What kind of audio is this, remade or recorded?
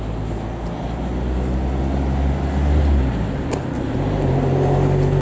recorded